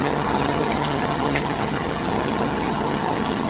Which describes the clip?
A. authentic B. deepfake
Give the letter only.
B